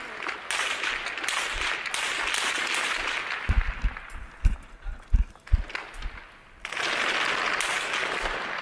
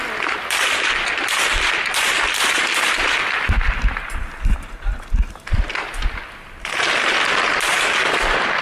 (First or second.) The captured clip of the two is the first